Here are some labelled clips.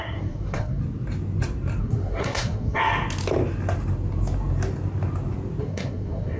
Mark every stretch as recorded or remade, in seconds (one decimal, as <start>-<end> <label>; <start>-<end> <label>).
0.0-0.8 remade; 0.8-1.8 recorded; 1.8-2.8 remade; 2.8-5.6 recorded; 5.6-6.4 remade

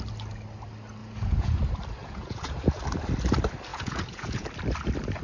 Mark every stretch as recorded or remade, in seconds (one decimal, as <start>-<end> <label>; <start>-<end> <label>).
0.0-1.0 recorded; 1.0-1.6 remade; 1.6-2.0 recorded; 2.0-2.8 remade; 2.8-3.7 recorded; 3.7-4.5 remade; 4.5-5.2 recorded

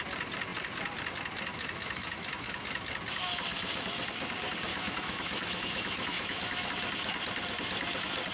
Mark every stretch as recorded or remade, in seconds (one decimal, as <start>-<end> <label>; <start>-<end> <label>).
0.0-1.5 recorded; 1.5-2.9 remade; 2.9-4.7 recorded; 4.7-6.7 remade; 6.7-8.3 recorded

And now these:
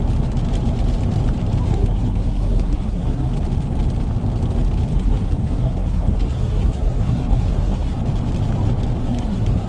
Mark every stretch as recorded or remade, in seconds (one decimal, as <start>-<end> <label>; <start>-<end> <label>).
0.0-1.7 recorded; 1.7-3.3 remade; 3.3-4.9 recorded; 4.9-8.0 remade; 8.0-9.0 recorded; 9.0-9.7 remade

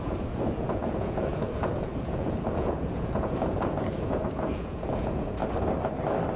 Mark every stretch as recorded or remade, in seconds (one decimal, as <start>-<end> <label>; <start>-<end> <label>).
0.0-5.4 remade; 5.4-6.4 recorded

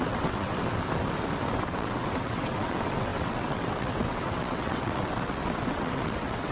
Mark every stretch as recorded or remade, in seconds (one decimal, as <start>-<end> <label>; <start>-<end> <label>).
0.0-0.5 remade; 0.5-1.5 recorded; 1.5-6.5 remade

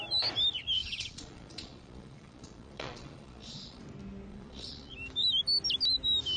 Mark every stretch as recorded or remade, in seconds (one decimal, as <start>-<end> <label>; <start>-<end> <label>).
0.0-0.8 recorded; 0.8-3.8 remade; 3.8-4.3 recorded; 4.3-4.9 remade; 4.9-6.4 recorded

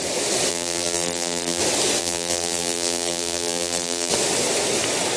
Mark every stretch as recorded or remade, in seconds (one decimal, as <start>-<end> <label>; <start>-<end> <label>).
0.0-0.5 recorded; 0.5-1.6 remade; 1.6-2.0 recorded; 2.0-4.1 remade; 4.1-5.2 recorded